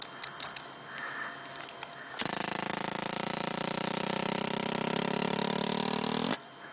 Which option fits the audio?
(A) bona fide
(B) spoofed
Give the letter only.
A